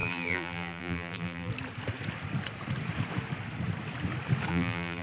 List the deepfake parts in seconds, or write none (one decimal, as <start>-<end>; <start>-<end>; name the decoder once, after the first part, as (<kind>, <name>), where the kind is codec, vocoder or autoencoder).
0.0-1.5 (vocoder, BigVGAN v2); 4.5-5.0